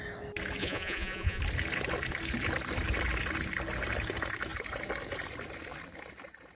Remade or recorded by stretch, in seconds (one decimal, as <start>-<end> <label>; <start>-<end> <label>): 0.0-0.6 recorded; 0.6-1.4 remade; 1.4-6.5 recorded